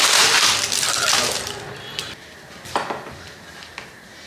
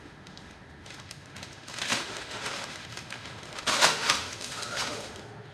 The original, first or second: first